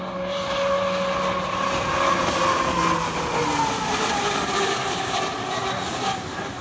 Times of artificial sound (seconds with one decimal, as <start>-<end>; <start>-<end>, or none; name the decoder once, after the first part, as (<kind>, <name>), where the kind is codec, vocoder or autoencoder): none